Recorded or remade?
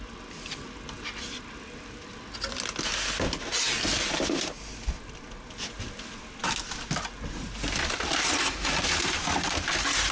recorded